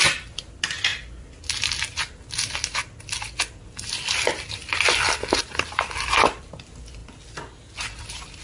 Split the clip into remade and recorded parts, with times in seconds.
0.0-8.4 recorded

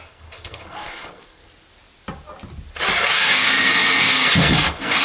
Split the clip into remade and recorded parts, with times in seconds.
0.0-1.4 remade; 1.4-3.0 recorded; 3.0-5.0 remade